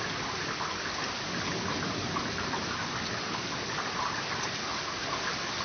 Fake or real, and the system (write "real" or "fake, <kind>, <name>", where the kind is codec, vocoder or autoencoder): real